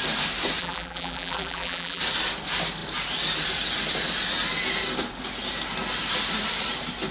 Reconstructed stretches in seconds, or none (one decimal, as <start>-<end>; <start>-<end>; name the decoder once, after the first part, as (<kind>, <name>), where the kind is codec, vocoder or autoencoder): 0.6-2.0 (vocoder, BigVGAN v2)